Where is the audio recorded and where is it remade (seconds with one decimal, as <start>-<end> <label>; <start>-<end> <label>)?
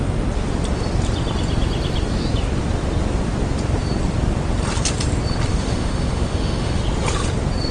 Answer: 0.0-5.5 recorded; 5.5-6.8 remade; 6.8-7.7 recorded